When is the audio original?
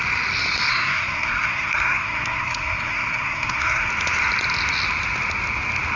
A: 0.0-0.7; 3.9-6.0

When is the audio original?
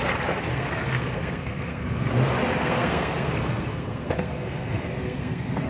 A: 0.0-0.5; 2.1-2.6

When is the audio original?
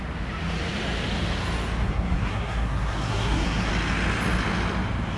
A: 0.0-1.8; 3.7-5.2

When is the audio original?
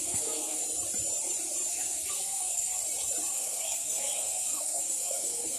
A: 0.6-1.7; 2.8-3.3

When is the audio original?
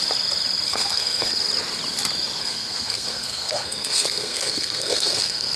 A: 0.0-0.7; 1.3-2.4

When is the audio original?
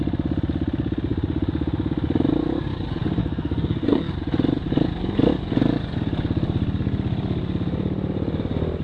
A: 0.0-3.2; 4.1-8.8